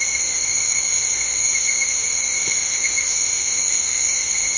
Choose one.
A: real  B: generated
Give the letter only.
B